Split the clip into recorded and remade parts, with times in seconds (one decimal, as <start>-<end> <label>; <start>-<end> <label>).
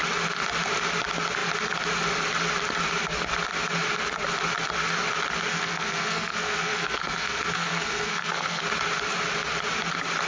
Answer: 0.0-5.5 recorded; 5.5-8.6 remade; 8.6-10.3 recorded